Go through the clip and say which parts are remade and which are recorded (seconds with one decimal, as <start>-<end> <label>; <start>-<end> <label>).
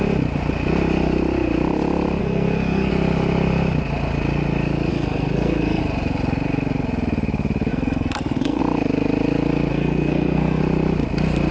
0.0-2.2 recorded; 2.2-2.9 remade; 2.9-4.9 recorded; 4.9-5.8 remade; 5.8-7.7 recorded; 7.7-8.6 remade; 8.6-9.7 recorded; 9.7-10.6 remade; 10.6-11.5 recorded